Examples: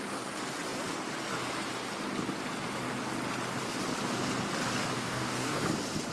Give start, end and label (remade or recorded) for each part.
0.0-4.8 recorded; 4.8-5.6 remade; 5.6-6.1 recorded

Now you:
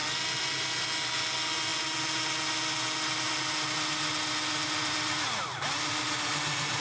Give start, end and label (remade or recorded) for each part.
0.0-6.8 recorded

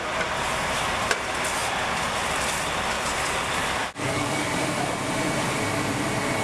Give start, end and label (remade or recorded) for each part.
0.0-3.6 recorded; 3.6-4.6 remade; 4.6-6.4 recorded

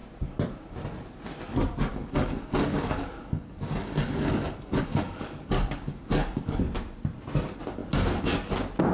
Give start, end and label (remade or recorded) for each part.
0.0-1.9 recorded; 1.9-6.6 remade; 6.6-8.9 recorded

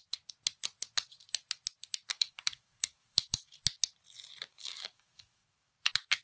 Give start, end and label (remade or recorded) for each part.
0.0-2.1 recorded; 2.1-3.5 remade; 3.5-4.5 recorded; 4.5-5.7 remade; 5.7-6.2 recorded

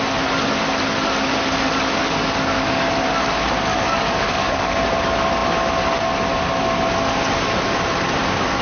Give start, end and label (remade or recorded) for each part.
0.0-2.0 recorded; 2.0-2.8 remade; 2.8-3.7 recorded; 3.7-4.7 remade; 4.7-8.6 recorded

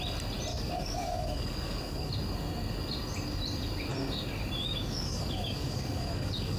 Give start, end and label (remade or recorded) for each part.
0.0-0.5 recorded; 0.5-2.1 remade; 2.1-4.6 recorded; 4.6-6.6 remade

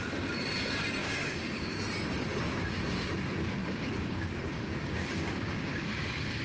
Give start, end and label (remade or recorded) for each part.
0.0-1.0 recorded; 1.0-1.8 remade; 1.8-3.6 recorded; 3.6-6.4 remade